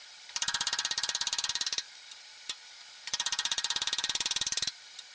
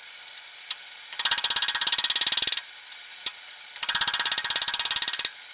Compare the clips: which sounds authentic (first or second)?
second